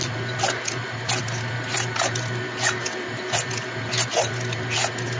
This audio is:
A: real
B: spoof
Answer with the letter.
A